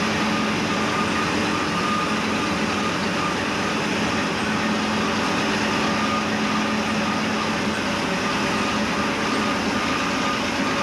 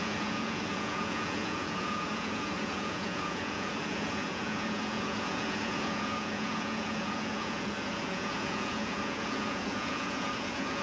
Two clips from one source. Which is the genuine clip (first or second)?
first